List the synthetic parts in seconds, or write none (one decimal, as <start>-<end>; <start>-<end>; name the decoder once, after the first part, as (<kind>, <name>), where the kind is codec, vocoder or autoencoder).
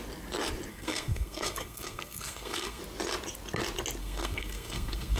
0.7-2.8 (codec, SNAC); 4.0-5.2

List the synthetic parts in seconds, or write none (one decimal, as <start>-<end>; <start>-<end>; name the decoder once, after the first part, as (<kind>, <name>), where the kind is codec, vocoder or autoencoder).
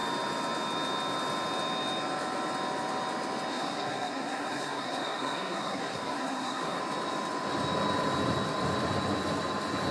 3.5-6.8 (codec, SNAC)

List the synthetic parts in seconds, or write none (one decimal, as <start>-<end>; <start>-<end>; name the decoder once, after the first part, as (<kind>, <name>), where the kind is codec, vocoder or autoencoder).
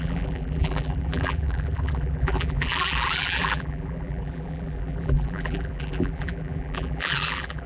0.0-7.7 (vocoder, BigVGAN v2)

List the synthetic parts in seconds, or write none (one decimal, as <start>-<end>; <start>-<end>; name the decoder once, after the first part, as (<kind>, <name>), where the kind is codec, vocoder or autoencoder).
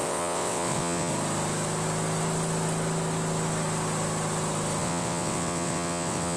0.0-1.1 (vocoder, WaveNeXt); 4.8-6.4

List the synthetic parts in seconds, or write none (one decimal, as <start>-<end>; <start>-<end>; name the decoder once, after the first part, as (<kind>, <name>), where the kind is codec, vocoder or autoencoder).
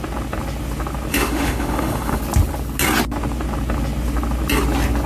1.1-2.2 (autoencoder, DAC-VAE)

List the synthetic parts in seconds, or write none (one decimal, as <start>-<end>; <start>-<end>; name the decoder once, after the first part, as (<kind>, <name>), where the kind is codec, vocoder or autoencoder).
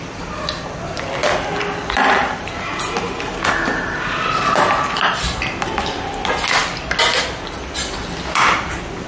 none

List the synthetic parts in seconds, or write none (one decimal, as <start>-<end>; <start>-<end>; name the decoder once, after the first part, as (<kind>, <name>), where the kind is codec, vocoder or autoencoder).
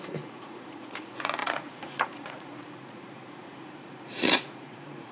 0.0-5.1 (vocoder, Vocos)